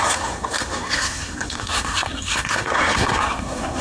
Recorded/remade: remade